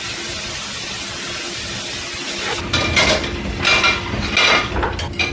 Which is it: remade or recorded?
recorded